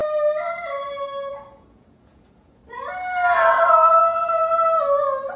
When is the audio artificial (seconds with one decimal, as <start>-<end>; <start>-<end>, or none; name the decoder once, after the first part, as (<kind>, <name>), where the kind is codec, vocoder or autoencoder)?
1.3-2.6 (vocoder, Vocos); 3.7-4.4